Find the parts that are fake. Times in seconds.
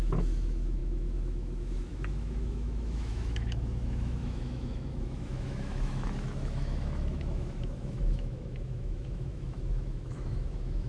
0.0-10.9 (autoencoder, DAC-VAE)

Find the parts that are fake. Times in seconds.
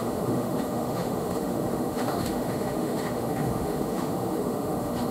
0.0-5.1 (autoencoder, DAC-VAE)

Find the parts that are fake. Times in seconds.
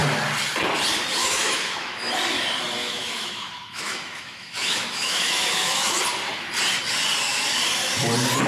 1.2-2.1 (autoencoder, DAC-VAE); 2.8-6.0